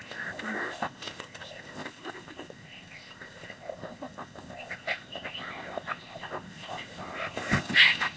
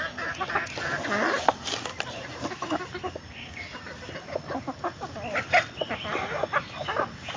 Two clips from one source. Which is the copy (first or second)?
first